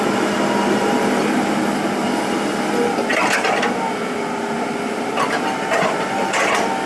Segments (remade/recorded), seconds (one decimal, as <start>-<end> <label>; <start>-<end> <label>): 0.0-6.9 recorded